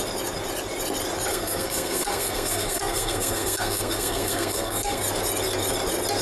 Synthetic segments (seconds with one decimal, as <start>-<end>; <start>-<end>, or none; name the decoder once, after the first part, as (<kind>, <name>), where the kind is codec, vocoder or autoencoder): 1.3-5.0 (codec, SNAC)